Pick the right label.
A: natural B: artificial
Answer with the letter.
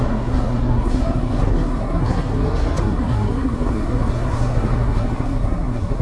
B